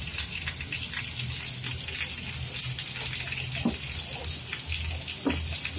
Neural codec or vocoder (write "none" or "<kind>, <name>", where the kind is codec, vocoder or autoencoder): none